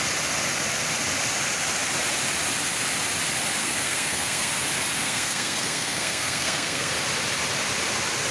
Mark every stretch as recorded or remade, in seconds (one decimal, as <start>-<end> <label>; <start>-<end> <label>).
0.0-3.6 recorded; 3.6-4.5 remade; 4.5-5.0 recorded; 5.0-6.9 remade; 6.9-8.3 recorded